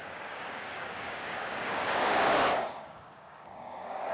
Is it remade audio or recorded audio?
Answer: remade